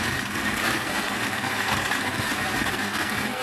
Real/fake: fake